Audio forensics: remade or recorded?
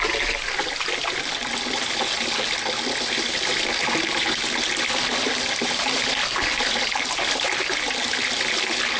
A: recorded